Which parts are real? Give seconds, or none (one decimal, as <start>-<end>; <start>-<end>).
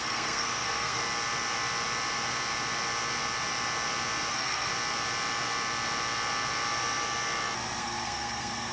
1.0-4.3; 4.7-7.8